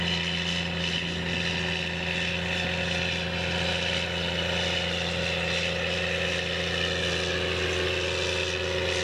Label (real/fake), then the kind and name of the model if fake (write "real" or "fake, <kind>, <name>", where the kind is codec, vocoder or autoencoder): real